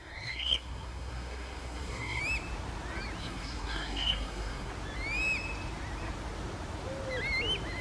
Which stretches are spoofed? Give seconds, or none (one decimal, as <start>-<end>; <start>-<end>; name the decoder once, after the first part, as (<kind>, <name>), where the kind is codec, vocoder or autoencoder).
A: 0.0-2.2 (codec, SNAC); 3.2-4.7